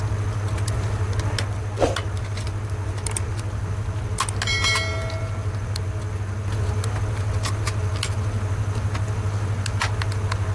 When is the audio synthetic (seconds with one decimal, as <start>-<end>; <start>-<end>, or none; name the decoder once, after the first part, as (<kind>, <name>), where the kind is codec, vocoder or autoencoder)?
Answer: none